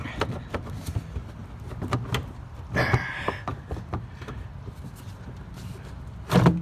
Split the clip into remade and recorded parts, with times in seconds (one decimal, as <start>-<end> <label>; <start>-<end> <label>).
0.0-6.6 recorded